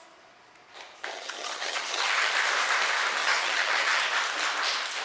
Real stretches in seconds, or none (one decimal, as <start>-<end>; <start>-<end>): 0.0-1.1; 2.3-3.2; 4.0-5.0

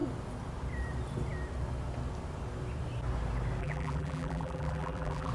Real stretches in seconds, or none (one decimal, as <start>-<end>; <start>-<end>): 0.0-3.6

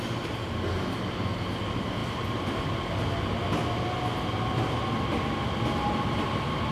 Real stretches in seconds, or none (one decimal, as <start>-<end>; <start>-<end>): 0.0-6.7

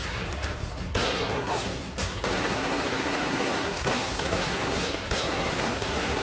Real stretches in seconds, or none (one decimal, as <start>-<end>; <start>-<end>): none

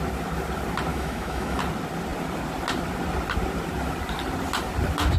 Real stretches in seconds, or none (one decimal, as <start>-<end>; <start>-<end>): 0.0-0.9; 1.6-5.2

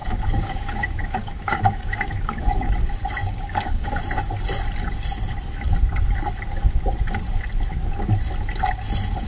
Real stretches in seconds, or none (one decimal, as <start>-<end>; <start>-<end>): 2.7-3.2; 3.9-9.3

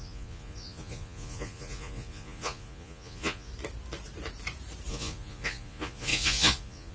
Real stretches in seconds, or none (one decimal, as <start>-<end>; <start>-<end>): 3.5-4.9

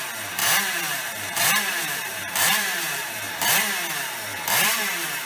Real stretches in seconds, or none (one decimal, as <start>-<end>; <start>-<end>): 0.0-0.4; 3.6-4.3